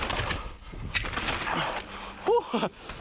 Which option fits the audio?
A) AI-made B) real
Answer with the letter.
B